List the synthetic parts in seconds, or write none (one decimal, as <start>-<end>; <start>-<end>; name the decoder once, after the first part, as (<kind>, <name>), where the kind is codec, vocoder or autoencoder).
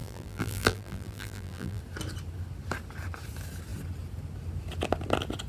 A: 0.0-1.8 (vocoder, BigVGAN v2)